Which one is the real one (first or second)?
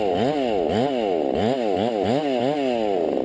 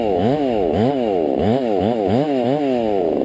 first